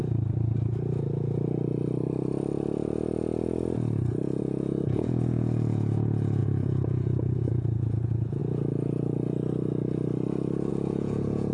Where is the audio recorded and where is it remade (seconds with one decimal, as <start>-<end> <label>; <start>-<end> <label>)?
0.0-4.4 recorded; 4.4-8.4 remade; 8.4-10.7 recorded; 10.7-11.5 remade